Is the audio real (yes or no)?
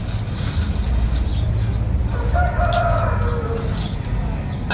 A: yes